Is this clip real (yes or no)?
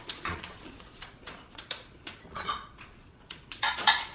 no